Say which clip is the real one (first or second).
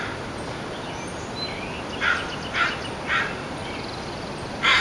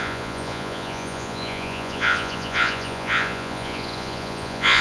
first